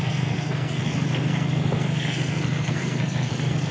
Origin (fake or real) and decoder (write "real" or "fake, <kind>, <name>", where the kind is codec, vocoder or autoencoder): fake, codec, SNAC